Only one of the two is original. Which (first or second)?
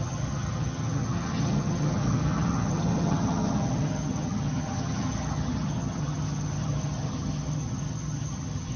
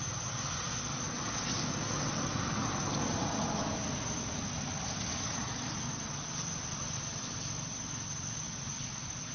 second